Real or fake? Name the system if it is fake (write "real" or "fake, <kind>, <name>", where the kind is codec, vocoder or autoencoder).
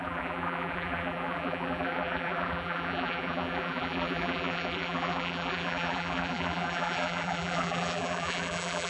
fake, vocoder, BigVGAN v2